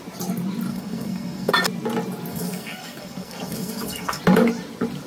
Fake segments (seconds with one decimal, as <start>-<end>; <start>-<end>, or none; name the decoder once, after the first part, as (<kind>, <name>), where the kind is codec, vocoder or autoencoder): 0.7-1.5 (codec, SNAC); 2.3-4.2